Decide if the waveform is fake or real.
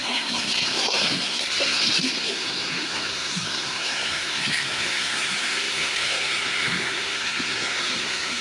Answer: fake